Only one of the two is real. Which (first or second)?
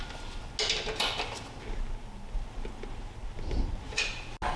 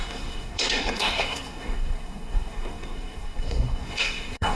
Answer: first